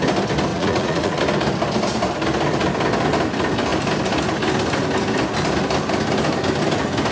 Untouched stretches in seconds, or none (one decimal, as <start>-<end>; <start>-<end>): 0.0-0.5; 1.2-7.1